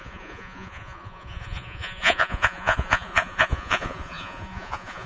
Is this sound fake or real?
fake